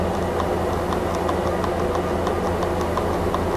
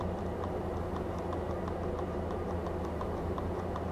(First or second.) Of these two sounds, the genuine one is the first